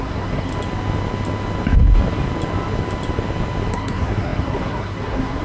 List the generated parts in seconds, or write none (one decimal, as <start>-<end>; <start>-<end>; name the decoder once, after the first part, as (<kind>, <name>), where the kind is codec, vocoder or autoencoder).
0.0-0.5 (codec, SNAC); 3.7-5.4